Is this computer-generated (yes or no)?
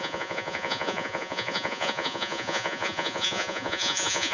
yes